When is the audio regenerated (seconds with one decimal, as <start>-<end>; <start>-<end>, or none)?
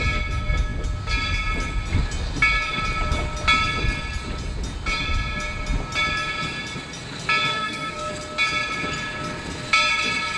7.5-8.1